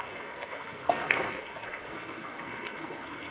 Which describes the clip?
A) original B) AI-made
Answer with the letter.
B